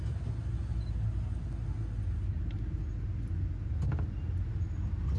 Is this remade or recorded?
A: recorded